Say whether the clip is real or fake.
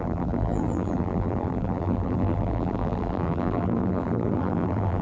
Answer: fake